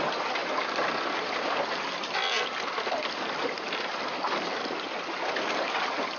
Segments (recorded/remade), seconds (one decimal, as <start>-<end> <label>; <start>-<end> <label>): 0.0-6.2 recorded